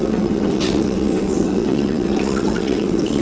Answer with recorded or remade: remade